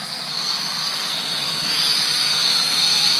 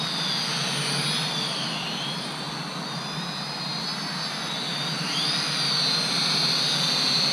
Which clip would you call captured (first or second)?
second